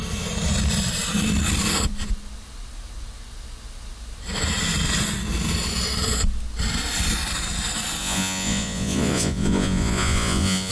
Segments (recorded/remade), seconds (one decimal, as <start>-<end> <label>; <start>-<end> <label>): 0.0-8.0 recorded; 8.0-10.7 remade